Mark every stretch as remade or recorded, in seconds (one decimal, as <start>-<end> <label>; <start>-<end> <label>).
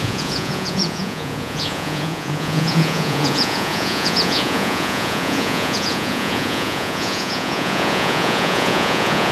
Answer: 0.0-9.3 remade